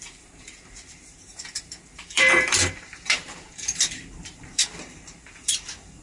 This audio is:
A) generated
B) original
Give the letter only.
A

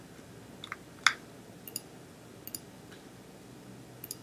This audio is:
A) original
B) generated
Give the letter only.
A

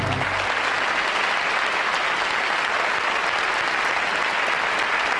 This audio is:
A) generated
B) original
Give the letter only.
B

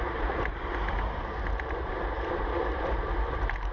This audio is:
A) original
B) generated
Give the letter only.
B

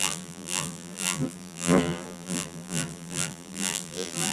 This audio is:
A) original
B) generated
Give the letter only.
B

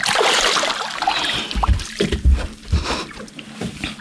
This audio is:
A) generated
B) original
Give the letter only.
B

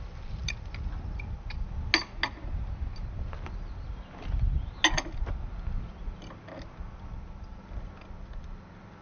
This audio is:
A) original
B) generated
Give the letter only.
A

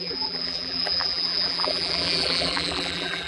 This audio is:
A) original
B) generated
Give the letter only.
B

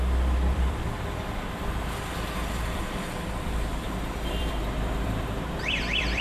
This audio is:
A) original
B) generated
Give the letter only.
B